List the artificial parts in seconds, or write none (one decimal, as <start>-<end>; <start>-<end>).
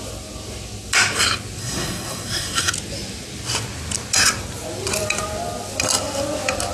1.6-2.7